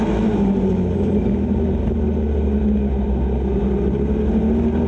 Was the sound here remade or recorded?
recorded